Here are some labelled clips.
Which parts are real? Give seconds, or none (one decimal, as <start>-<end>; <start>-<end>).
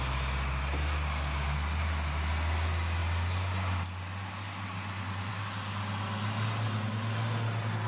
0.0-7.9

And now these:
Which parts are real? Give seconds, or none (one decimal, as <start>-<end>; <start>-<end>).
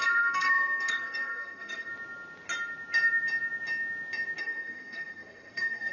1.9-4.4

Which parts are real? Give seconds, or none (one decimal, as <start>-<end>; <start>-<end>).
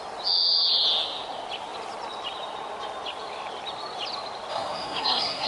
0.0-4.5